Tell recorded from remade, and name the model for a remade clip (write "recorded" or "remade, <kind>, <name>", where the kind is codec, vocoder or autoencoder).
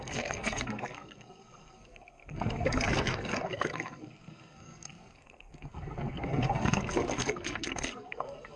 remade, codec, SNAC